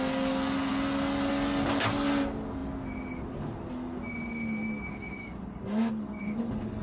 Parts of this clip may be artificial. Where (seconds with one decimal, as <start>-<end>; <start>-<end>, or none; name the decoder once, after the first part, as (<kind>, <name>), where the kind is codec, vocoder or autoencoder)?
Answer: none